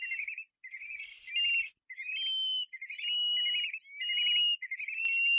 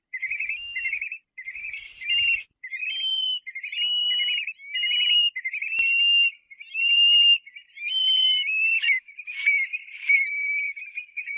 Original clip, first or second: first